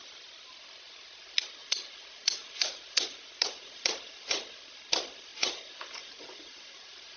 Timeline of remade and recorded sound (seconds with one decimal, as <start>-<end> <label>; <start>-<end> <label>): 0.0-1.6 recorded; 1.6-4.4 remade; 4.4-5.3 recorded; 5.3-7.2 remade